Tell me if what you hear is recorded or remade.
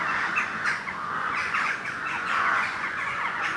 remade